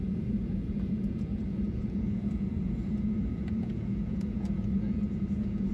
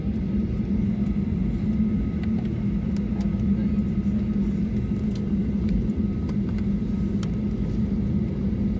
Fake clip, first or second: first